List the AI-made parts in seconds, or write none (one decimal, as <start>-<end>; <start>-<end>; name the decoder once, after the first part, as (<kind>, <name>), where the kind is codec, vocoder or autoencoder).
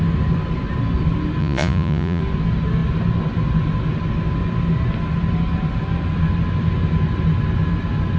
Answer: 1.4-2.2 (vocoder, Vocos)